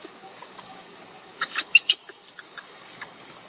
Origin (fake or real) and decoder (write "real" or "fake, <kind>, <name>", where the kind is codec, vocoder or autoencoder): fake, codec, DAC